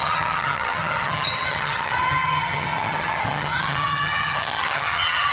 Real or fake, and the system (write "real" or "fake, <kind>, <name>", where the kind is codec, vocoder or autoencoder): fake, vocoder, HiFi-GAN